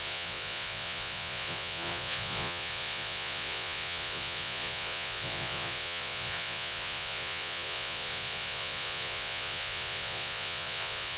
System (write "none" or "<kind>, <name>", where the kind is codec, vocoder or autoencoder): vocoder, Vocos